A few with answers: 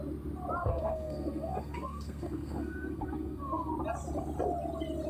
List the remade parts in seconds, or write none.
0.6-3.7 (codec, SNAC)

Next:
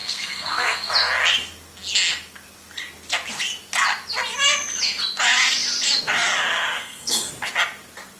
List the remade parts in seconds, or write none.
0.0-0.9 (codec, SNAC); 6.8-7.3